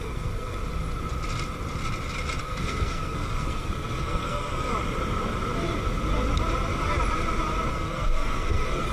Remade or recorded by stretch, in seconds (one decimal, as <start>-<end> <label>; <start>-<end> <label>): 0.0-0.6 remade; 0.6-2.4 recorded; 2.4-4.7 remade; 4.7-7.7 recorded; 7.7-8.9 remade